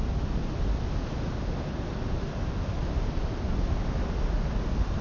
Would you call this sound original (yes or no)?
yes